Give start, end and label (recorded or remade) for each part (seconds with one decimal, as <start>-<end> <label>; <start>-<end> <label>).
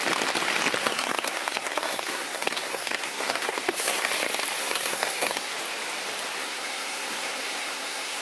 0.0-0.8 recorded; 0.8-4.1 remade; 4.1-4.6 recorded; 4.6-5.5 remade; 5.5-6.4 recorded; 6.4-8.2 remade